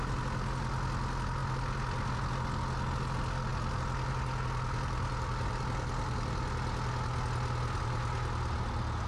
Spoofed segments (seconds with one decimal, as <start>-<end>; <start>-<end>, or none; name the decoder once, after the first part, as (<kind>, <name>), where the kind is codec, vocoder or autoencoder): none